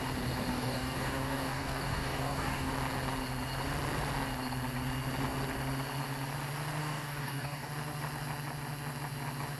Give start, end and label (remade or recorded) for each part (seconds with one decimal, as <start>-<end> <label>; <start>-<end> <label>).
0.0-0.5 recorded; 0.5-2.7 remade; 2.7-6.8 recorded; 6.8-7.7 remade; 7.7-9.6 recorded